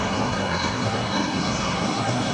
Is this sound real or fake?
fake